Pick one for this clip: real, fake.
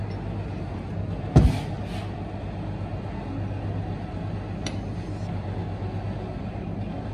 real